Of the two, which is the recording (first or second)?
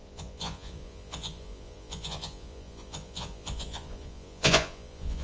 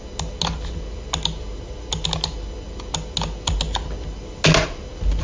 second